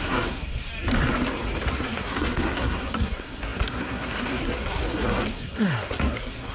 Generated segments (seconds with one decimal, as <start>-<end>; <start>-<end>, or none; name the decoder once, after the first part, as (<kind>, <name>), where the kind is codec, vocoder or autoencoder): 0.0-0.7 (codec, SNAC); 1.7-6.5